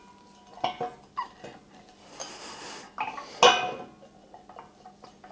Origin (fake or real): real